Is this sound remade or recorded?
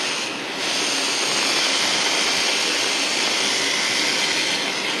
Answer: recorded